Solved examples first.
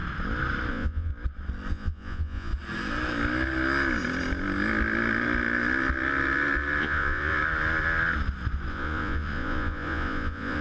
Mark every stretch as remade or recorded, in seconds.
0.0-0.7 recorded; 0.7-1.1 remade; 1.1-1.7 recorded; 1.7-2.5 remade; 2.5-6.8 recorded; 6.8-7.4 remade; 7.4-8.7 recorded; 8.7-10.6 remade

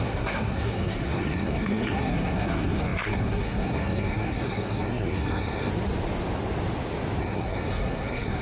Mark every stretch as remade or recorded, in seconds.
0.0-5.7 remade; 5.7-7.2 recorded; 7.2-8.4 remade

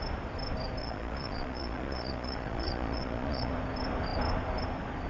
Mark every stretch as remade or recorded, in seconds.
0.0-0.8 recorded; 0.8-3.5 remade; 3.5-5.1 recorded

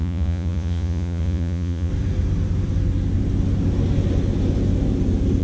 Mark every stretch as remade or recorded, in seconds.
0.0-1.9 remade; 1.9-5.4 recorded

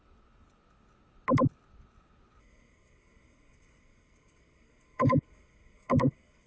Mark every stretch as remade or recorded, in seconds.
0.0-2.4 recorded; 2.4-6.5 remade

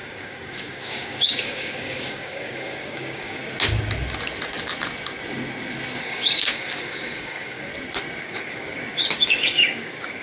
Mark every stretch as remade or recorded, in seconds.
0.0-3.4 remade; 3.4-6.0 recorded; 6.0-7.7 remade; 7.7-8.2 recorded; 8.2-10.2 remade

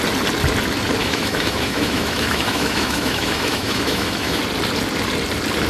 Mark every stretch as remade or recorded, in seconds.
0.0-1.0 recorded; 1.0-4.4 remade; 4.4-5.7 recorded